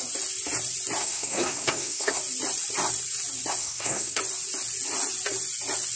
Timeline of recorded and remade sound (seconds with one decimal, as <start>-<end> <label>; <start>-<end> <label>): 0.0-1.0 recorded; 1.0-2.2 remade; 2.2-3.6 recorded; 3.6-4.2 remade; 4.2-6.0 recorded